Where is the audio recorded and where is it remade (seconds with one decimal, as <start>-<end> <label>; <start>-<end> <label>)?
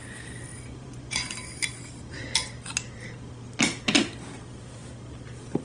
0.0-0.5 recorded; 0.5-1.3 remade; 1.3-5.6 recorded